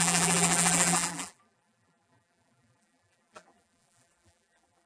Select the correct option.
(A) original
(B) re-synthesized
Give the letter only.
B